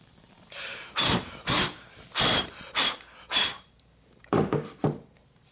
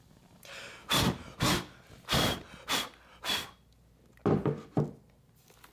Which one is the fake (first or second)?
first